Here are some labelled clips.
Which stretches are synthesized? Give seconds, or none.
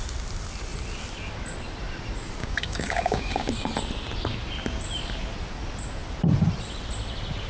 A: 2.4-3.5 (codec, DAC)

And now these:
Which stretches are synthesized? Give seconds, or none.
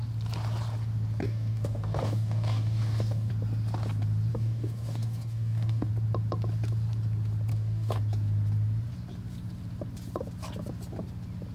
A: 1.2-3.3 (codec, DAC); 4.3-5.9; 7.5-8.0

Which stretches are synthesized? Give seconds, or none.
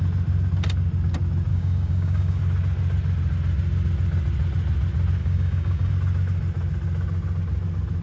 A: 1.5-2.4 (codec, DAC); 5.2-5.9